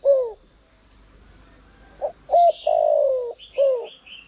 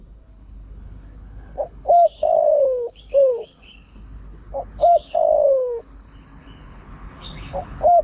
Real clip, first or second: first